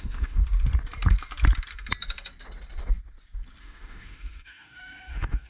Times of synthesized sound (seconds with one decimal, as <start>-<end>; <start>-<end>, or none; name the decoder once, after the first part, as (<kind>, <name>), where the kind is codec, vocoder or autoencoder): 0.0-0.4 (autoencoder, DAC-VAE); 3.6-5.5